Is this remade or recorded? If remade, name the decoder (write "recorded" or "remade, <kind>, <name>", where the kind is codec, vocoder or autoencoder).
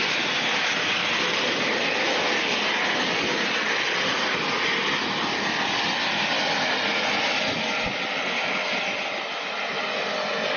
recorded